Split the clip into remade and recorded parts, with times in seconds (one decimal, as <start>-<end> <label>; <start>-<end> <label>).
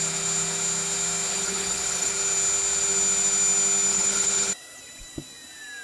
0.0-1.3 recorded; 1.3-2.1 remade; 2.1-3.9 recorded; 3.9-4.5 remade; 4.5-5.8 recorded